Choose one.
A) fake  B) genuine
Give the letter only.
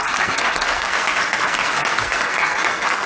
A